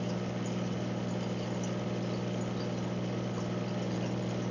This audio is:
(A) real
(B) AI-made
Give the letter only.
A